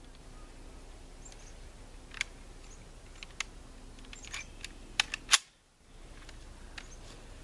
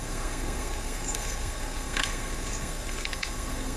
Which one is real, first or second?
first